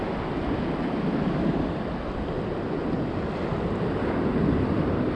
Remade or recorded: recorded